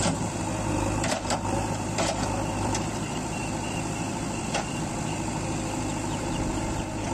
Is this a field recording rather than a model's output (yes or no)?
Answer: no